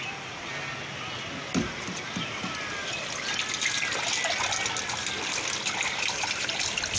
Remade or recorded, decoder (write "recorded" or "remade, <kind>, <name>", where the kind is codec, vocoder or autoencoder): recorded